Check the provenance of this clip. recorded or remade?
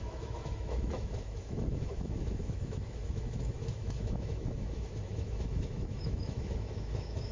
remade